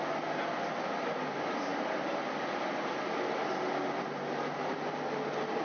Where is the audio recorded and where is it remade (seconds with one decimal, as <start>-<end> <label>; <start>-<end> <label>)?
0.0-5.6 recorded